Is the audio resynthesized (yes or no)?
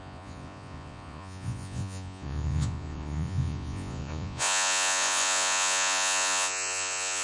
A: yes